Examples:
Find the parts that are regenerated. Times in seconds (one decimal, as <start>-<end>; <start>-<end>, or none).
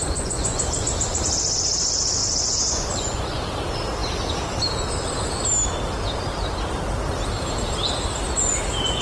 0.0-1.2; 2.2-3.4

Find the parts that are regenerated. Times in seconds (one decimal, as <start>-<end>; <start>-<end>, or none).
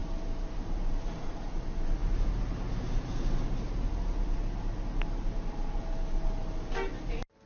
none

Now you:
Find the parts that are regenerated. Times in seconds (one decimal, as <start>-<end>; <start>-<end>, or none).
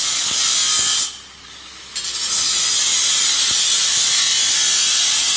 none